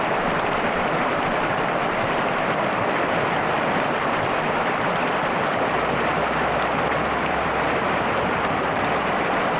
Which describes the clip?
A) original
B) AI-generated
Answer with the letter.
B